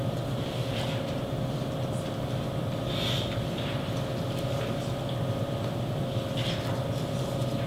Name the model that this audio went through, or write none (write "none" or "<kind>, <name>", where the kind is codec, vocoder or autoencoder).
none